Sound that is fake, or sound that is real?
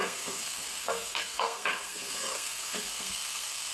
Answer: fake